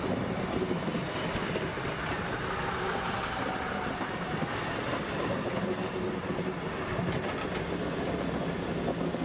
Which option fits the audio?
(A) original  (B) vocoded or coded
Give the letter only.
A